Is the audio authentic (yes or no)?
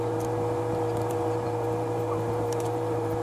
no